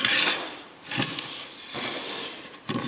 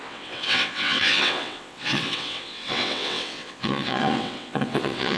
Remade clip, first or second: second